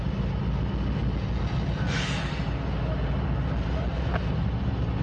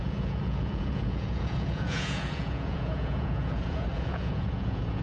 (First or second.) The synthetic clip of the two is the second